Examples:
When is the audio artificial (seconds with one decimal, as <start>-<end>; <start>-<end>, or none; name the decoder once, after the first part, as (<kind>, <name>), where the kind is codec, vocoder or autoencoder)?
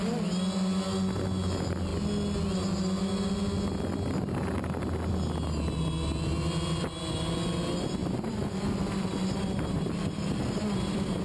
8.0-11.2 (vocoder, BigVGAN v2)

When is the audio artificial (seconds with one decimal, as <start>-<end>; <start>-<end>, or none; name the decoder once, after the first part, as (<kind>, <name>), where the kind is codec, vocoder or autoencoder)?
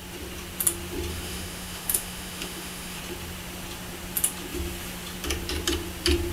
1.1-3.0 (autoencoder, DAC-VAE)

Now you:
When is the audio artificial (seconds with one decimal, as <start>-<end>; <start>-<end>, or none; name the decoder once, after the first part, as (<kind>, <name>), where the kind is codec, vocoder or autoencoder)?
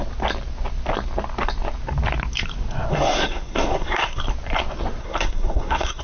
2.9-4.2 (codec, SNAC); 5.0-6.0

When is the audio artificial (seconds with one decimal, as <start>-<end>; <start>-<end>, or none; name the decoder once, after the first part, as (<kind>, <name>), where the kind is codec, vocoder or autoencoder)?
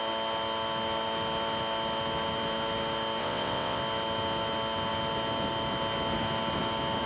3.2-3.8 (vocoder, WaveNeXt)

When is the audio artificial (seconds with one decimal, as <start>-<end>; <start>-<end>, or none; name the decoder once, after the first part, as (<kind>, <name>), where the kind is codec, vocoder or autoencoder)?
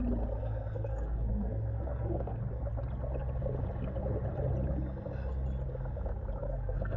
0.4-2.4 (codec, SNAC); 6.4-7.0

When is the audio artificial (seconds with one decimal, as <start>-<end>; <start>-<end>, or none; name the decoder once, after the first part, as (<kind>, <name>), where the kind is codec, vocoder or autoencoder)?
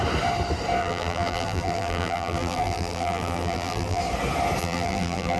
0.8-4.0 (vocoder, BigVGAN v2); 4.6-5.4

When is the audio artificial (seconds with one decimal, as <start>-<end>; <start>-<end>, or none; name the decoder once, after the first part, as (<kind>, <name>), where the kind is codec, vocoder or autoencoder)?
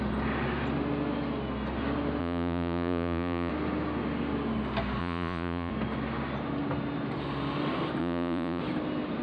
2.2-3.5 (vocoder, Vocos); 5.0-5.7; 8.0-8.6